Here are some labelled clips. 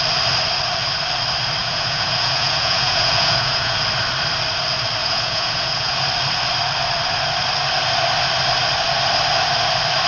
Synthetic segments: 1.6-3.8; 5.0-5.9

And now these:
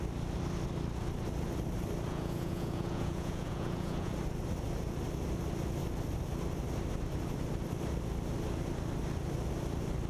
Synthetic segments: 2.1-4.1

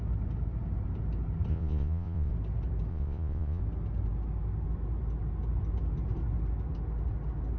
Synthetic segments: 1.5-2.3; 2.9-3.6

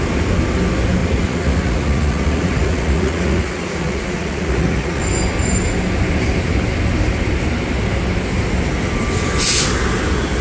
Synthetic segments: 1.0-5.0

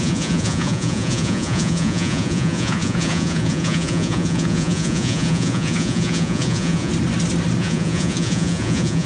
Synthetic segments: 0.0-6.9; 7.6-9.1

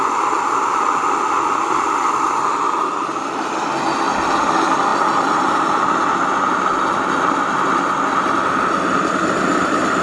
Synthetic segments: none

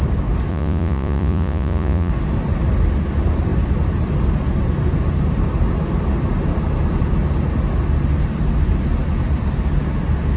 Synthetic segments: 0.5-2.1